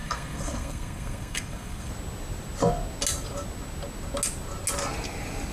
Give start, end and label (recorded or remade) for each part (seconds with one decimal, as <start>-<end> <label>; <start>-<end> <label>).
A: 0.0-1.9 remade; 1.9-5.5 recorded